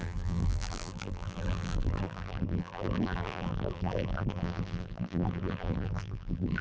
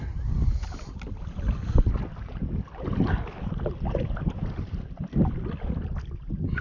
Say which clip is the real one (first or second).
second